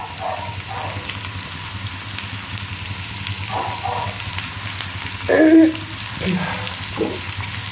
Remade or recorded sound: recorded